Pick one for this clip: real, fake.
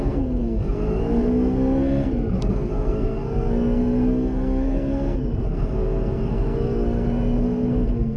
fake